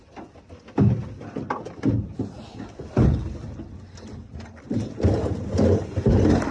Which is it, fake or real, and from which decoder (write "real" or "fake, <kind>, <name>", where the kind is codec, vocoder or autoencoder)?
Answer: real